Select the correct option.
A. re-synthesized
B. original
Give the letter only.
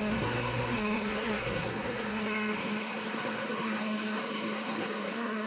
A